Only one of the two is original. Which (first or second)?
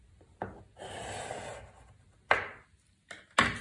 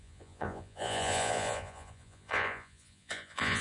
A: first